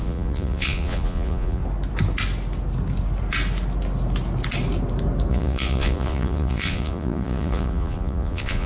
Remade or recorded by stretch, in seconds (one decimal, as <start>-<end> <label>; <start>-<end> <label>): 0.0-1.6 remade; 1.6-5.3 recorded; 5.3-8.7 remade